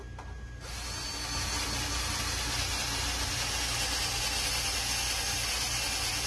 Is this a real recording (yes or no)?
yes